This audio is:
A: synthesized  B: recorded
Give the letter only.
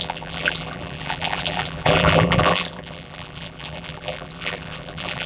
A